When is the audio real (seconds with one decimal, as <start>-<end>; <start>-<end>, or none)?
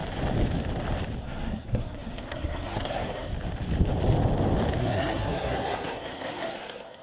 0.0-1.2; 3.3-4.8